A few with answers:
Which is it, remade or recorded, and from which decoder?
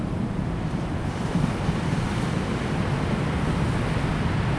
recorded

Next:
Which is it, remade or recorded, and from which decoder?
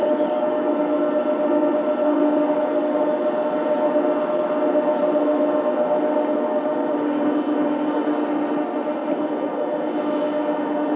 recorded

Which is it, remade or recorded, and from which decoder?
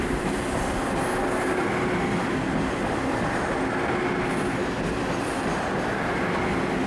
recorded